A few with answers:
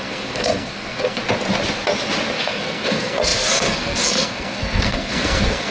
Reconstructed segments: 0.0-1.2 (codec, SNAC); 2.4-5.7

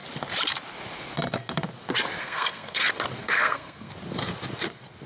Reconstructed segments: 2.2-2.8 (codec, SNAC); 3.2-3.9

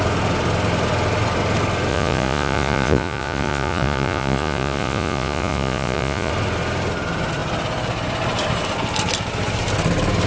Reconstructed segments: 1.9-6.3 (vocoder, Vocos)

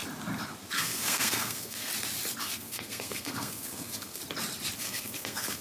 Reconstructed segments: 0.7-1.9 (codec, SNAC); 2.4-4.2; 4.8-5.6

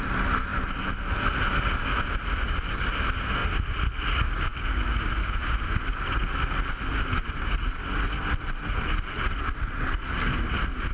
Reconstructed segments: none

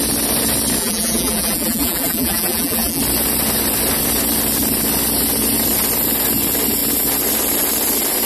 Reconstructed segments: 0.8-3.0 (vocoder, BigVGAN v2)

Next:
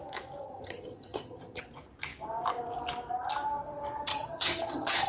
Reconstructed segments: 0.4-1.6 (vocoder, HiFi-GAN); 4.1-5.1

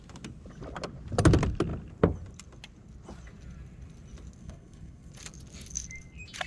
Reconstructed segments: 4.4-5.1 (codec, SNAC)